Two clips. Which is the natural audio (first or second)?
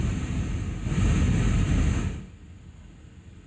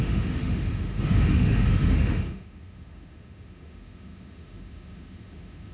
first